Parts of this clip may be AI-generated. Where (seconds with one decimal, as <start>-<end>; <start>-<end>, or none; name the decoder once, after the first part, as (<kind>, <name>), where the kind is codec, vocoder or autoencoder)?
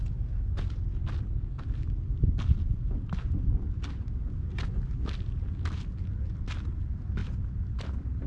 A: 7.2-8.3 (vocoder, BigVGAN v2)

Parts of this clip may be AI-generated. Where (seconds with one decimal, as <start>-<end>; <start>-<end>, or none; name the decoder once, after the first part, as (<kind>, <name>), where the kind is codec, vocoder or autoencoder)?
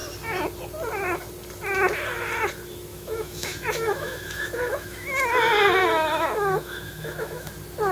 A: 2.9-5.3 (autoencoder, DAC-VAE); 5.8-7.5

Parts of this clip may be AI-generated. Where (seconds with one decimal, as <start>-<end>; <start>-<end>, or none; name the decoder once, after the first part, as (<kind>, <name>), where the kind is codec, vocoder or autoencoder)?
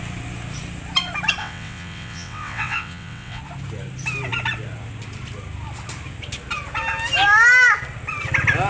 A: 1.4-3.4 (vocoder, WaveNeXt)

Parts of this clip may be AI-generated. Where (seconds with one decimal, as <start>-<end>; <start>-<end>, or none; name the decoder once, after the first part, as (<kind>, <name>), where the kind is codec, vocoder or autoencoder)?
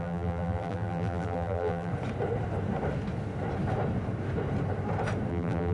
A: 0.0-1.9 (vocoder, BigVGAN v2); 5.3-5.7